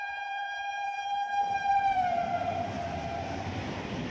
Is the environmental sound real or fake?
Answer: fake